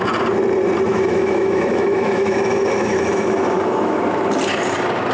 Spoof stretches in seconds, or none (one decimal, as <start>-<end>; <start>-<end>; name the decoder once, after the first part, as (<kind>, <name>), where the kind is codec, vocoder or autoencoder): 0.9-4.0 (autoencoder, DAC-VAE)